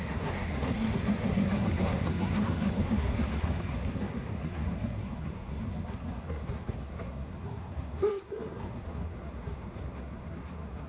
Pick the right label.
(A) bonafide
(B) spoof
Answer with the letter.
B